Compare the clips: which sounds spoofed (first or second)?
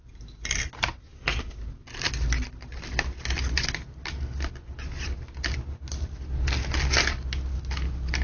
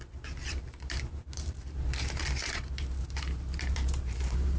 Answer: second